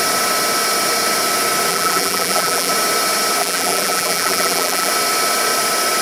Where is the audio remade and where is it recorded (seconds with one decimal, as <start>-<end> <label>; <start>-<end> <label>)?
0.0-1.7 recorded; 1.7-2.7 remade; 2.7-3.4 recorded; 3.4-4.9 remade; 4.9-6.0 recorded